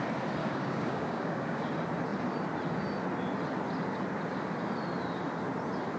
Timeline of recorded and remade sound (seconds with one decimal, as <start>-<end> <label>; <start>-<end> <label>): 0.0-0.4 recorded; 0.4-1.6 remade; 1.6-6.0 recorded